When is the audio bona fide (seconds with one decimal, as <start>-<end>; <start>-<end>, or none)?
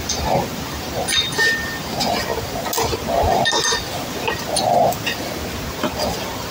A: 0.0-6.5